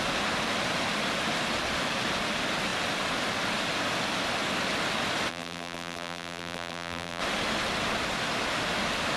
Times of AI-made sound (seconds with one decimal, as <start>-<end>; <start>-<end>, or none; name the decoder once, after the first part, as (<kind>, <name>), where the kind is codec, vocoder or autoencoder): 5.3-7.2 (vocoder, BigVGAN v2)